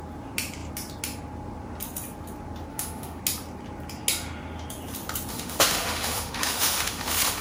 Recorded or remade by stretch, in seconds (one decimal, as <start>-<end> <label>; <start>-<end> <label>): 0.0-2.7 recorded; 2.7-3.2 remade; 3.2-5.3 recorded; 5.3-7.4 remade